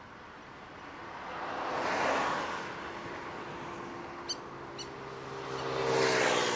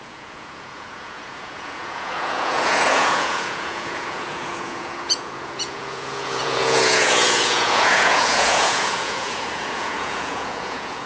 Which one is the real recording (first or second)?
first